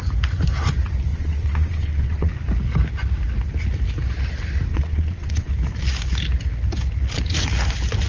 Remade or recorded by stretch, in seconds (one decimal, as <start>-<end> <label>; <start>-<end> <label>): 0.0-1.1 recorded; 1.1-2.3 remade; 2.3-4.7 recorded; 4.7-5.5 remade; 5.5-8.1 recorded